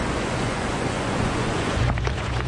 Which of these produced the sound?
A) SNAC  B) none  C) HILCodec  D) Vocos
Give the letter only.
D